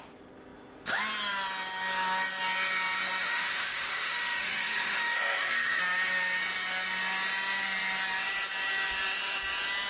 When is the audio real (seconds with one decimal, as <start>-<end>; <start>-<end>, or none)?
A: 0.0-3.2; 5.8-9.9